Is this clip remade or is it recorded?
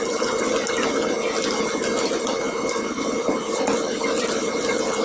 recorded